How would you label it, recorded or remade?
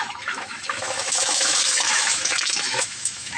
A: remade